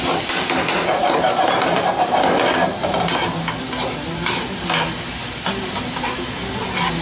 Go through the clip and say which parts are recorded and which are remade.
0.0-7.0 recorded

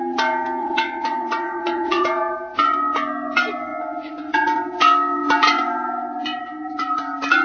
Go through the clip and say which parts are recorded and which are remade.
0.0-0.6 recorded; 0.6-2.0 remade; 2.0-7.4 recorded